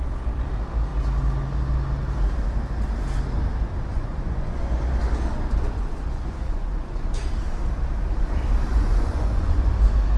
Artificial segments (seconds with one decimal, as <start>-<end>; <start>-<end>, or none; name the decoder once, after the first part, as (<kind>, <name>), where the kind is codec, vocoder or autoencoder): 3.9-4.6 (vocoder, Vocos); 5.3-7.2; 8.7-9.7